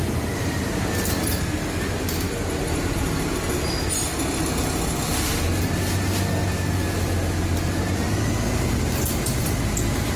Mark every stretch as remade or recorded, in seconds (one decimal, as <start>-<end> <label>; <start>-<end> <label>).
0.0-10.2 recorded